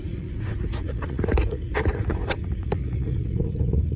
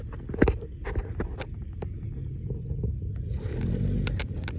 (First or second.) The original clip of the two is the second